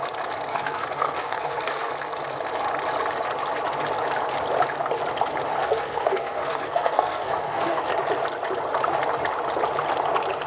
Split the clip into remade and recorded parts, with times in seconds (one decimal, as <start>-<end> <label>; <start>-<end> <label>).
0.0-0.5 recorded; 0.5-1.9 remade; 1.9-5.6 recorded; 5.6-7.8 remade; 7.8-10.5 recorded